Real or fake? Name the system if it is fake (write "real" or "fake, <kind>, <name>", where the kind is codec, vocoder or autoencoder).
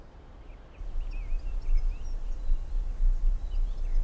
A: real